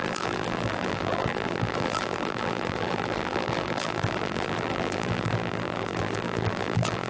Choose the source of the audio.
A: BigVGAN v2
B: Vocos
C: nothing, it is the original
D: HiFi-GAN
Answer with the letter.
A